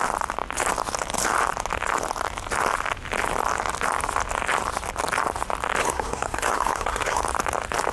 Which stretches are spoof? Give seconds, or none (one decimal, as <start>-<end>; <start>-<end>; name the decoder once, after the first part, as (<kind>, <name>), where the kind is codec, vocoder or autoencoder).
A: 5.8-7.2 (codec, SNAC)